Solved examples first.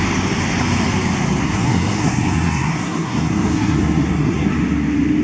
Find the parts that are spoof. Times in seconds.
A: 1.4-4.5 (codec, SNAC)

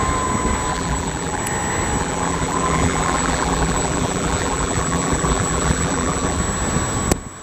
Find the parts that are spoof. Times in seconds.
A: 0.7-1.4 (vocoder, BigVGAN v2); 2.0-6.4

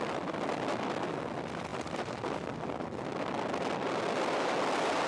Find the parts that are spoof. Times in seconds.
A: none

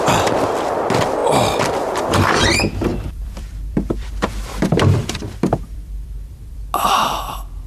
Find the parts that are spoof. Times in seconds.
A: 2.9-6.6 (vocoder, BigVGAN v2)

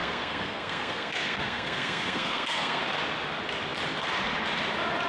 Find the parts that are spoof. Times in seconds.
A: 0.0-2.8 (codec, SNAC)